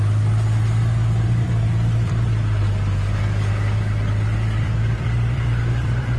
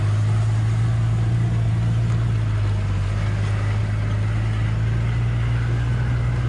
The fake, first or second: first